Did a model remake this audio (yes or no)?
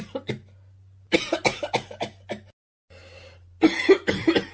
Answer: no